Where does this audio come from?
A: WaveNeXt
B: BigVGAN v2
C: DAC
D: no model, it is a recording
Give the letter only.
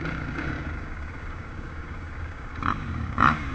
C